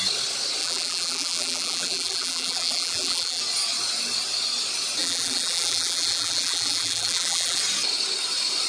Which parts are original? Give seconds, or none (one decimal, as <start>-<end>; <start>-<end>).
0.0-0.6; 3.4-5.0; 7.6-8.7